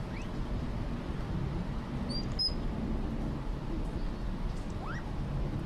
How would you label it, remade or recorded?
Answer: recorded